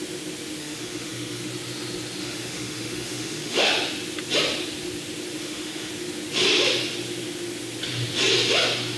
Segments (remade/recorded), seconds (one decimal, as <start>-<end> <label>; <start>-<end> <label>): 0.0-0.6 recorded; 0.6-1.5 remade; 1.5-2.2 recorded; 2.2-3.7 remade; 3.7-5.4 recorded; 5.4-5.9 remade; 5.9-9.0 recorded